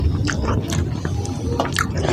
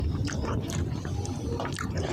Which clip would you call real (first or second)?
first